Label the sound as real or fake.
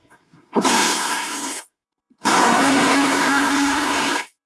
fake